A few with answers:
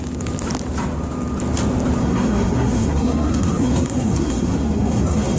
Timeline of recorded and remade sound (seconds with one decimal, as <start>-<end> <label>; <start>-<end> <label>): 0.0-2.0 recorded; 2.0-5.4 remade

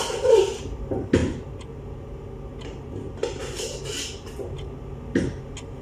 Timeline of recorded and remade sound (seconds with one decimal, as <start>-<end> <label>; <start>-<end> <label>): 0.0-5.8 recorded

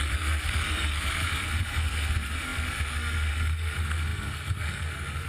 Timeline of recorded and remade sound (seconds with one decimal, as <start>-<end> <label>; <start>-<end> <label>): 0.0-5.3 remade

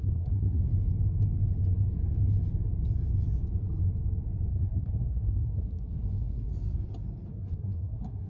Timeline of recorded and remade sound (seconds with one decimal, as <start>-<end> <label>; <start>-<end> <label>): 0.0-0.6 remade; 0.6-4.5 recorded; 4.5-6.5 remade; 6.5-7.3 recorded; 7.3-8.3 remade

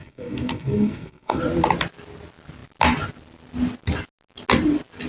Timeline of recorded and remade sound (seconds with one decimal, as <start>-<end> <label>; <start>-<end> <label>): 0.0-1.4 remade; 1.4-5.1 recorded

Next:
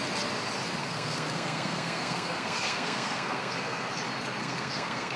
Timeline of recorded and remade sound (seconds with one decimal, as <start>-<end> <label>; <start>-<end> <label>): 0.0-0.8 recorded; 0.8-3.9 remade; 3.9-4.4 recorded; 4.4-5.2 remade

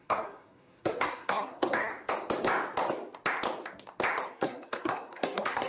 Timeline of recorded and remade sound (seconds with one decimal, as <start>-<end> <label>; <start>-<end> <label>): 0.0-1.9 remade; 1.9-4.3 recorded; 4.3-5.7 remade